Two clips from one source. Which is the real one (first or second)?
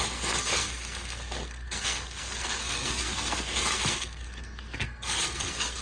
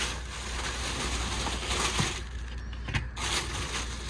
second